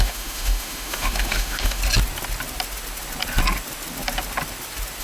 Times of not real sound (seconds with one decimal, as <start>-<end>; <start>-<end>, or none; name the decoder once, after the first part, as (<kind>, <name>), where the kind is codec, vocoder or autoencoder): 0.0-1.8 (autoencoder, DAC-VAE)